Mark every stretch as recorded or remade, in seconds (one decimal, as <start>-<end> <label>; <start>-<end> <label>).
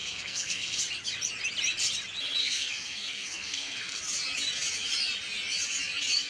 0.0-0.8 remade; 0.8-2.4 recorded; 2.4-4.0 remade; 4.0-6.3 recorded